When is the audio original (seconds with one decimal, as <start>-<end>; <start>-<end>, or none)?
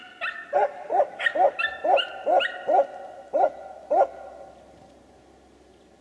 0.0-6.0